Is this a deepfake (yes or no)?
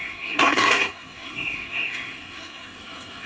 yes